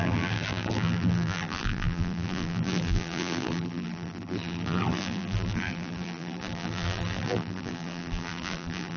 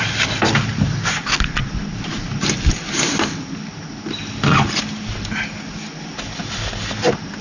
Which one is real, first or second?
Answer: second